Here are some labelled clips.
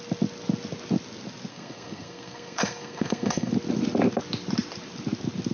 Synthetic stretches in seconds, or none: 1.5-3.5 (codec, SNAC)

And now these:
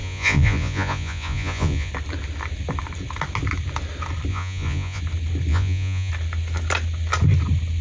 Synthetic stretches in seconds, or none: 0.0-1.9 (vocoder, Vocos); 4.3-5.0; 5.5-6.1

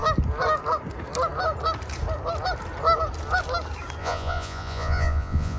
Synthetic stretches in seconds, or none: 4.0-5.6 (vocoder, Vocos)

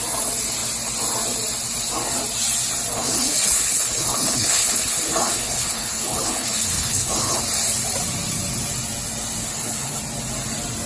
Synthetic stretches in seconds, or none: 2.9-7.4 (codec, HILCodec); 9.4-10.0

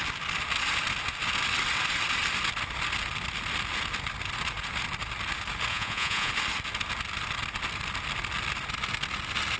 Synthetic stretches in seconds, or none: 5.7-6.3 (vocoder, Vocos)